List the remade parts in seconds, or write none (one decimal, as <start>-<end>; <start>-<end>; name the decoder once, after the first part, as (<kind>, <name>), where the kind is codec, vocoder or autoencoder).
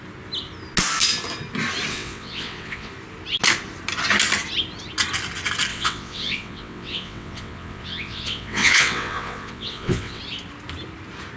1.9-2.9 (vocoder, WaveNeXt); 5.7-10.2